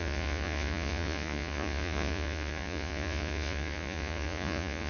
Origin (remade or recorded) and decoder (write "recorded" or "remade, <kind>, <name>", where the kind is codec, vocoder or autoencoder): remade, vocoder, Vocos